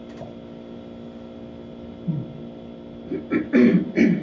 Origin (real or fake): real